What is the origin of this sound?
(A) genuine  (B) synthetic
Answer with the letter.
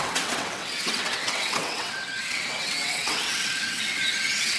B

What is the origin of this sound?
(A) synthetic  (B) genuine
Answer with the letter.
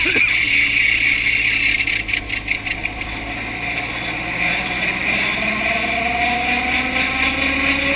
B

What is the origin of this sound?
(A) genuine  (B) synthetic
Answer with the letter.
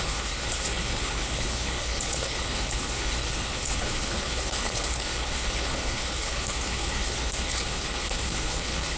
B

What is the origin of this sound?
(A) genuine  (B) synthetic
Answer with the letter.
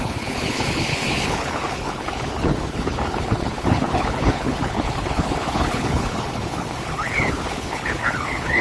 B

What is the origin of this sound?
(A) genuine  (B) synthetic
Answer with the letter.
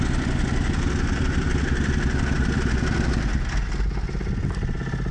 A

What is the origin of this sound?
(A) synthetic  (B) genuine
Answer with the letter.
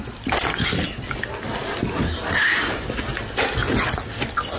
B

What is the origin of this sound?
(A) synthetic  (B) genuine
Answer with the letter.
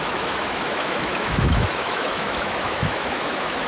A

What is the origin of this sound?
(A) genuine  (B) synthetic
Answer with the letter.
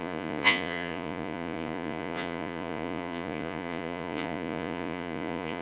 B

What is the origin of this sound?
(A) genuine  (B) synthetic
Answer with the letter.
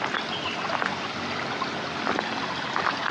A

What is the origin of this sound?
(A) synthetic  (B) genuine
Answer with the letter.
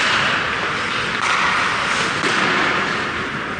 B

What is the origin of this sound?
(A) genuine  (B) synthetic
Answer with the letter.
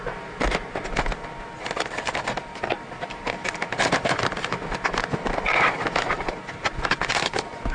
A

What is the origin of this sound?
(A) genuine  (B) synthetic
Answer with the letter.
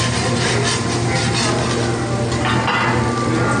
A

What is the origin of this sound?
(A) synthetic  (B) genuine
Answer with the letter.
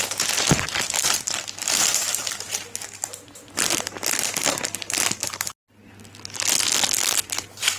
B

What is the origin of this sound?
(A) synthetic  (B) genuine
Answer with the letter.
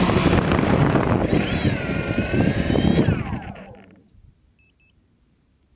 A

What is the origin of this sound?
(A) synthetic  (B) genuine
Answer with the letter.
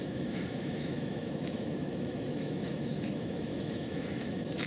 A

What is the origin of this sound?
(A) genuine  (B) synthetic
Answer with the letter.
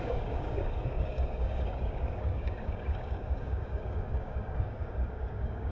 B